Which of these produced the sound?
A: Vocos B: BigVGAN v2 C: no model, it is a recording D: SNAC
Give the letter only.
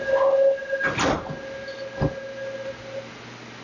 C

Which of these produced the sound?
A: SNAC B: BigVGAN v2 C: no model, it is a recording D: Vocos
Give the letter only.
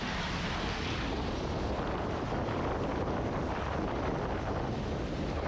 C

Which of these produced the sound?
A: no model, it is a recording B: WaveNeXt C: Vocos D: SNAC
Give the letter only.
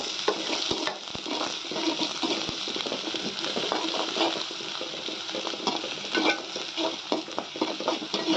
A